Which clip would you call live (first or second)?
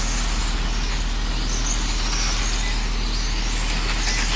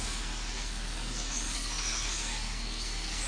first